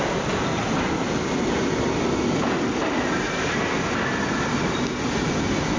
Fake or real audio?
real